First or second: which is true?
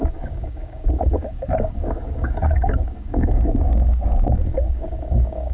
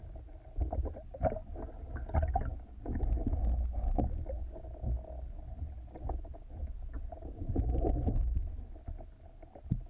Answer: second